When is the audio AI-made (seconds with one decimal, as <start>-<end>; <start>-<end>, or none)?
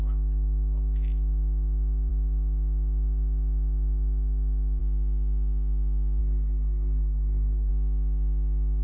6.2-7.7